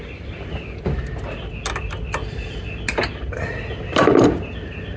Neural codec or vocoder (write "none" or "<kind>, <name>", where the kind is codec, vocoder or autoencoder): none